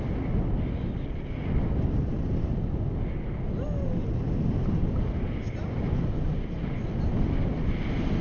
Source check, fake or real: real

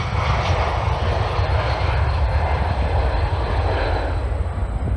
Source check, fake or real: real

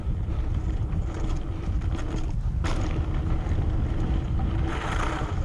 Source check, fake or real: real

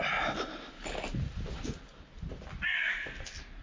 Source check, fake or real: real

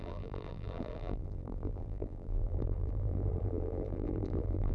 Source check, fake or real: fake